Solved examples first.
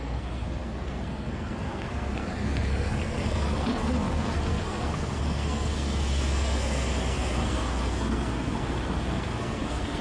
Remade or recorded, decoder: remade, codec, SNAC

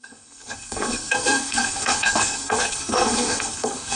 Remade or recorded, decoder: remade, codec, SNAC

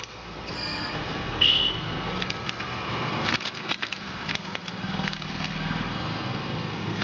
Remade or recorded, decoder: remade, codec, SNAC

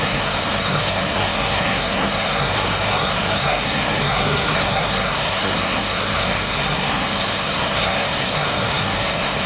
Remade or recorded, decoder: remade, codec, SNAC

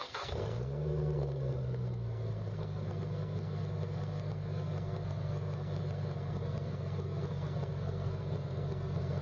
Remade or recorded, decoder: remade, codec, SNAC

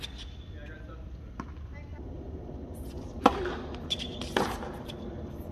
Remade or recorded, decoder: recorded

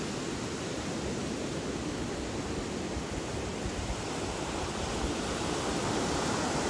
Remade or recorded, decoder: recorded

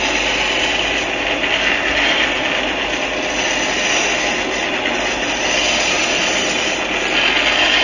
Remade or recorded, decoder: recorded